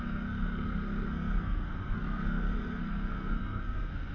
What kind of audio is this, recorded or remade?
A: remade